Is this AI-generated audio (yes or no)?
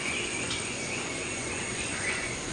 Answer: yes